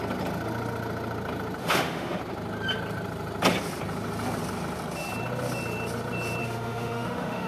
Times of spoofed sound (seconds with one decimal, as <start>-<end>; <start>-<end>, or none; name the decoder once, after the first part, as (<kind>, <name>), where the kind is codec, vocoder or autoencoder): 1.6-2.2 (autoencoder, DAC-VAE); 6.4-7.5